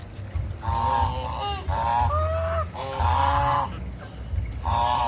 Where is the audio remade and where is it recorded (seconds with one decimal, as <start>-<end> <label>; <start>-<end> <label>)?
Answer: 0.0-4.5 recorded; 4.5-5.1 remade